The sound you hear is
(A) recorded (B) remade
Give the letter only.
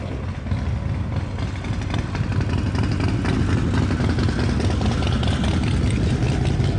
A